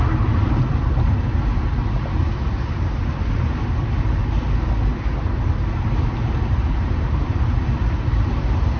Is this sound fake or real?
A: real